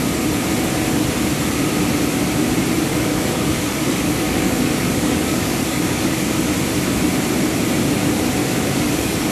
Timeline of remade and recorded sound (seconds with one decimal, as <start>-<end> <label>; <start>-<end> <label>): 0.0-2.9 recorded; 2.9-6.3 remade; 6.3-8.4 recorded; 8.4-9.3 remade